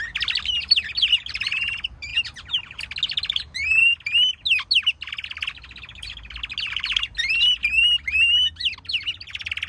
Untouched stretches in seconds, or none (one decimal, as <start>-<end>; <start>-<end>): 0.0-9.7